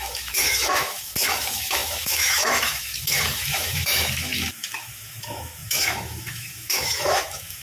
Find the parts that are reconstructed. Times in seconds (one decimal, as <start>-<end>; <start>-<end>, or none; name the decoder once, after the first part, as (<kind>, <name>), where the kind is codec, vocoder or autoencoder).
0.0-7.6 (autoencoder, DAC-VAE)